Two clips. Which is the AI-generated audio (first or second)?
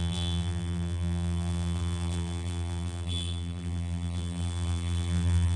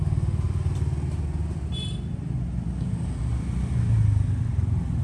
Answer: first